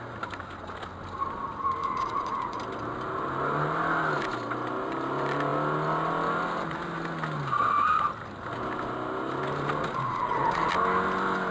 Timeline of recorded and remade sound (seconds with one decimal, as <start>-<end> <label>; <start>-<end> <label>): 0.0-1.8 recorded; 1.8-2.6 remade; 2.6-9.8 recorded; 9.8-10.7 remade; 10.7-11.5 recorded